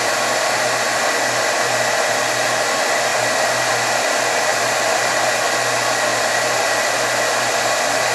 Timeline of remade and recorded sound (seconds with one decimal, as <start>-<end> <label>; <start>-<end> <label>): 0.0-3.1 recorded; 3.1-3.7 remade; 3.7-4.5 recorded; 4.5-5.2 remade; 5.2-6.1 recorded; 6.1-6.7 remade; 6.7-8.1 recorded

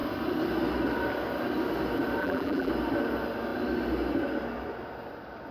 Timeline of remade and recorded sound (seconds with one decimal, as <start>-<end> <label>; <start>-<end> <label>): 0.0-2.2 recorded; 2.2-2.7 remade; 2.7-5.5 recorded